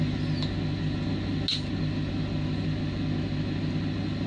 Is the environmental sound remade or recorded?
recorded